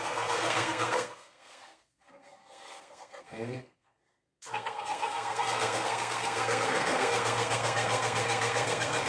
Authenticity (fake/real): fake